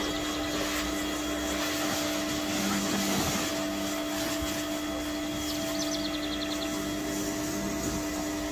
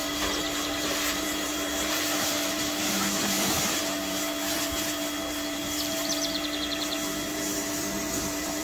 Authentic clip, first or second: first